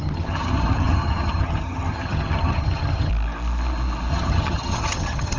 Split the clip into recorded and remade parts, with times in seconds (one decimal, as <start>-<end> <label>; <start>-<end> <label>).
0.0-3.1 remade; 3.1-4.1 recorded; 4.1-5.4 remade